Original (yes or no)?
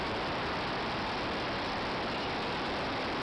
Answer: yes